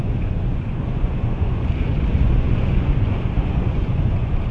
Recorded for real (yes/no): no